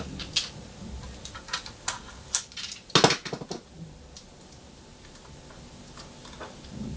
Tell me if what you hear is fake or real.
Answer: real